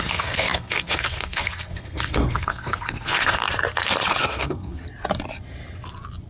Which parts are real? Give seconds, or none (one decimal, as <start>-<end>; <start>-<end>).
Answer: 3.4-4.2; 4.8-6.3